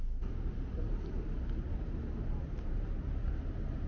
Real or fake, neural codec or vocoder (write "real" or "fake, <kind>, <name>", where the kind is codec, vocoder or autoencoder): real